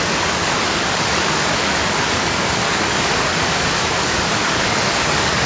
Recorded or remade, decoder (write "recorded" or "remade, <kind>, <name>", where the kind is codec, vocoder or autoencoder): remade, codec, DAC